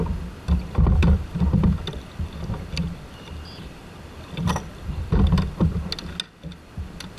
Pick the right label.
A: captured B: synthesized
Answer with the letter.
A